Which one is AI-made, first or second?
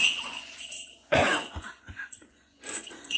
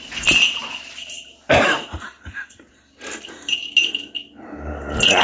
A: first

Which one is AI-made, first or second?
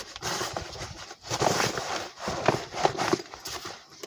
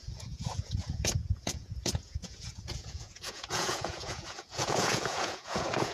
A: second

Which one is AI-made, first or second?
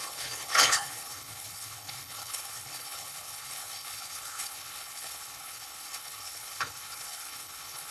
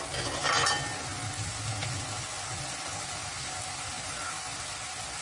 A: first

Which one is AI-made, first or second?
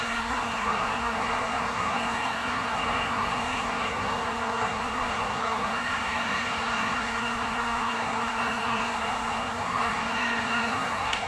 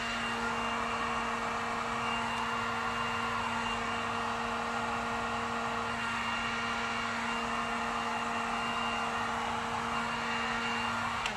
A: first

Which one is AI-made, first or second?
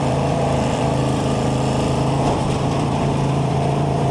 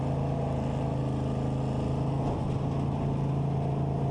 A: first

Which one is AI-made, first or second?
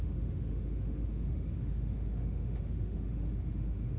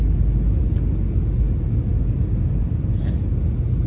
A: first